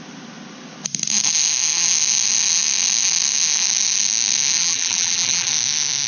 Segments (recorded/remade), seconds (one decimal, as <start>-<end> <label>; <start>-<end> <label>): 0.0-4.6 recorded; 4.6-5.5 remade; 5.5-6.1 recorded